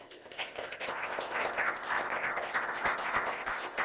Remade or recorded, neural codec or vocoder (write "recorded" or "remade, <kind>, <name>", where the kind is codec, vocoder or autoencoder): remade, codec, ZipCodec